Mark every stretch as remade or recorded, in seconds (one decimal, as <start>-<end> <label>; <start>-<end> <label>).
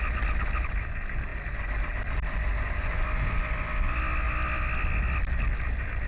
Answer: 0.0-6.1 recorded